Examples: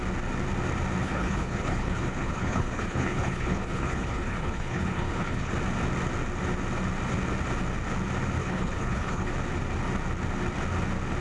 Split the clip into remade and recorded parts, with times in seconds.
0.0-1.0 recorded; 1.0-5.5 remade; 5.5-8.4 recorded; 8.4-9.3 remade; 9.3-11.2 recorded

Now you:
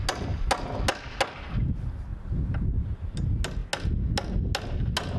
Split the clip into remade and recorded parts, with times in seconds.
0.0-2.1 recorded; 2.1-3.0 remade; 3.0-5.2 recorded